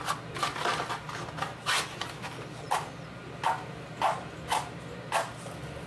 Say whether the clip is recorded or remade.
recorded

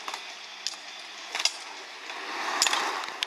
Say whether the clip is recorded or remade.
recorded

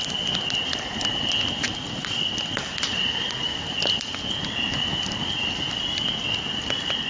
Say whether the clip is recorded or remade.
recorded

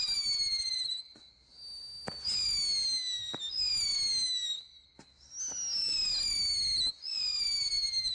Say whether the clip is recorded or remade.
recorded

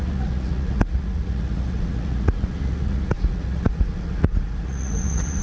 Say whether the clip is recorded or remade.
remade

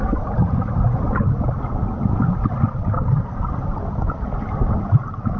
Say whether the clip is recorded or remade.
recorded